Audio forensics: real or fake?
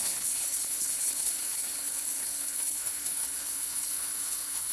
fake